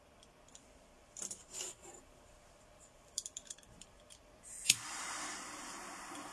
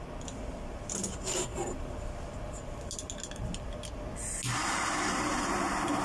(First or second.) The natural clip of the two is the second